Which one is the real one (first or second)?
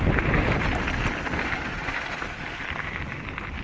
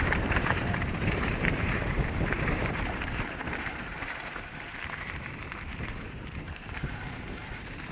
first